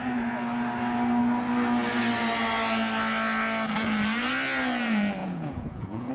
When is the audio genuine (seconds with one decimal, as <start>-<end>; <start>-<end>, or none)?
0.0-5.2